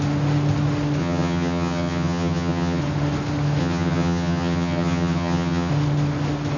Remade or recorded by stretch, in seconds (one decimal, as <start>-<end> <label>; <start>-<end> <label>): 0.0-1.0 recorded; 1.0-2.8 remade; 2.8-3.6 recorded; 3.6-5.7 remade; 5.7-6.6 recorded